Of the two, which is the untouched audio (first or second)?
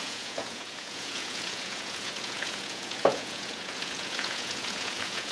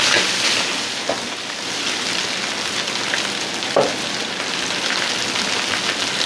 second